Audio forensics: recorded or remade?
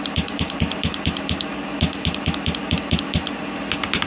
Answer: recorded